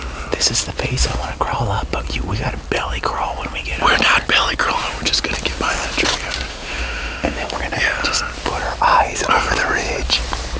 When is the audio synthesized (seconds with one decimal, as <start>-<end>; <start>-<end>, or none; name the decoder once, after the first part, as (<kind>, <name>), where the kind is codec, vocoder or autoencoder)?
6.5-7.6 (autoencoder, DAC-VAE)